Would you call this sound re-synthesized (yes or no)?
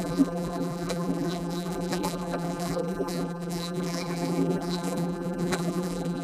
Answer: yes